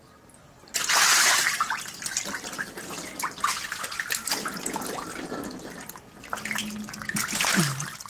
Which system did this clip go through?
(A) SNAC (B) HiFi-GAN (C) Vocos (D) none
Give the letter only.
D